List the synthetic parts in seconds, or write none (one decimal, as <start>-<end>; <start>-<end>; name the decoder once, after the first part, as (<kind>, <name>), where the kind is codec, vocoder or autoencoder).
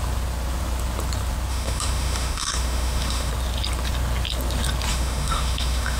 1.5-3.3 (autoencoder, DAC-VAE); 4.9-6.0